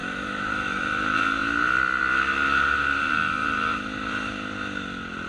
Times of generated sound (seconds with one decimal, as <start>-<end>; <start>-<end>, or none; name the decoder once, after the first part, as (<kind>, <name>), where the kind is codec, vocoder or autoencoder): 0.0-0.8 (autoencoder, DAC-VAE)